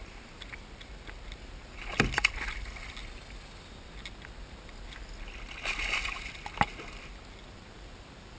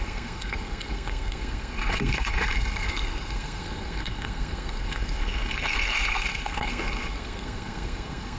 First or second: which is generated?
second